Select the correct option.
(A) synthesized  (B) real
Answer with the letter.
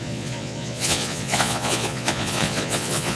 A